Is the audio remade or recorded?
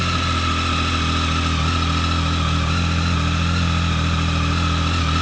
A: recorded